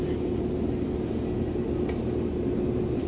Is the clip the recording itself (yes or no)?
yes